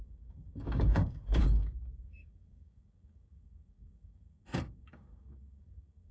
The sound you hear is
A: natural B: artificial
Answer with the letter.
B